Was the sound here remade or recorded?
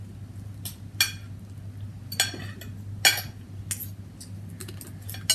recorded